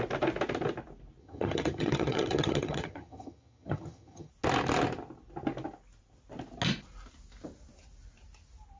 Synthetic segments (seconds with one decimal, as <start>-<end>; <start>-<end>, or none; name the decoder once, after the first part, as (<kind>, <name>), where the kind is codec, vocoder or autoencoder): 1.2-4.3 (vocoder, HiFi-GAN)